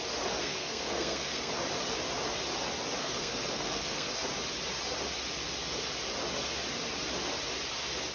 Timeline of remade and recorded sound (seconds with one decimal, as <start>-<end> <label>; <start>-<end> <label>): 0.0-0.4 recorded; 0.4-1.5 remade; 1.5-3.0 recorded; 3.0-4.1 remade; 4.1-8.1 recorded